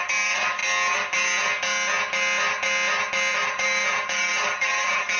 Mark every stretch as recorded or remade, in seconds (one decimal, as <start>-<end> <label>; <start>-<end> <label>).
0.0-0.6 remade; 0.6-3.3 recorded; 3.3-5.2 remade